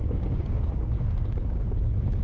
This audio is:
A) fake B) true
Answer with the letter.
A